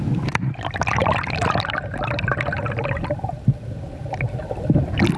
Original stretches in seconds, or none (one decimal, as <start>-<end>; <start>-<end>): 0.0-5.2